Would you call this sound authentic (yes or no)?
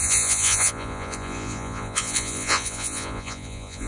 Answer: no